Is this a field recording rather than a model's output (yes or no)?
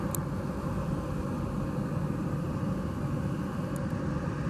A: yes